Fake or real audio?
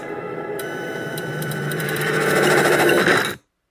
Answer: fake